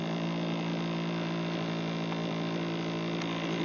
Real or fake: real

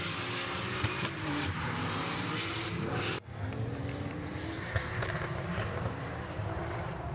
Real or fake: fake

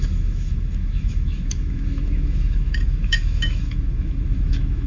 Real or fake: fake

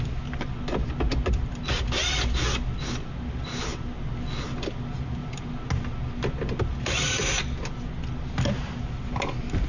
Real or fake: real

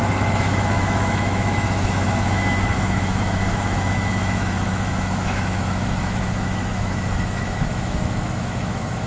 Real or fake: fake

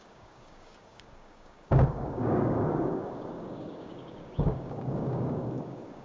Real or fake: fake